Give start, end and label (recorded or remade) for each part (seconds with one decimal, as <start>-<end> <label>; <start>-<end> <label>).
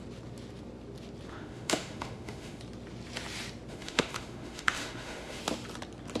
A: 0.0-1.3 recorded; 1.3-2.6 remade; 2.6-3.7 recorded; 3.7-5.4 remade; 5.4-6.2 recorded